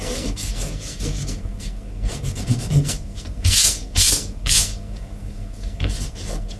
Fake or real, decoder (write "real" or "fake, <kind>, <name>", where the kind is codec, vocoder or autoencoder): fake, codec, SNAC